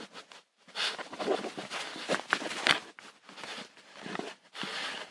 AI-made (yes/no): yes